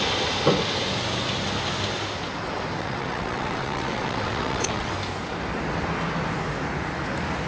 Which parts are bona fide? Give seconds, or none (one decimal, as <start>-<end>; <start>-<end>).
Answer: 0.0-2.8; 4.9-7.5